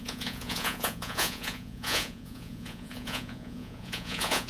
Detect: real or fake fake